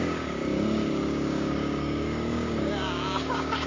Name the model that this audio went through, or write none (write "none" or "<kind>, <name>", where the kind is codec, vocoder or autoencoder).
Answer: codec, DAC